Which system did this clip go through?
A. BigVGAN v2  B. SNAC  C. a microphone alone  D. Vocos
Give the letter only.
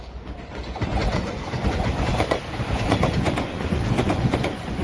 D